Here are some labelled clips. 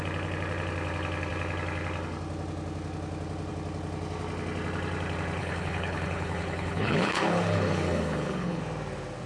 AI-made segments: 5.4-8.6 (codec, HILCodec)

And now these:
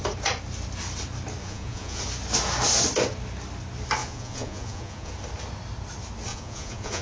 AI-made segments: 1.4-2.0 (vocoder, Vocos); 4.0-5.1; 6.3-7.0

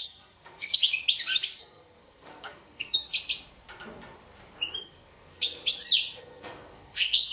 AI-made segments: 0.0-0.7 (codec, SNAC); 1.6-3.1; 4.8-5.6; 6.2-7.3

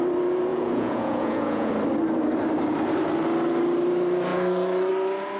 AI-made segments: 0.5-1.7 (vocoder, Vocos)

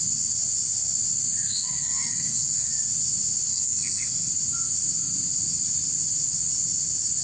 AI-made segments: 1.5-2.7 (codec, SNAC); 3.5-4.3

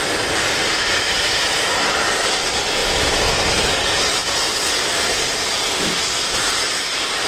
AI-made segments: none

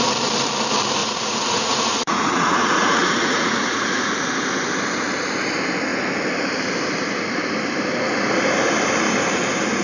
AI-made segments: 1.0-4.1 (vocoder, Vocos)

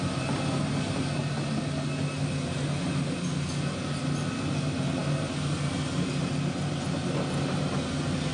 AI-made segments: none